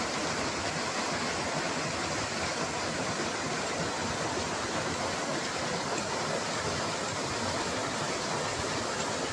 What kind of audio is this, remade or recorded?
recorded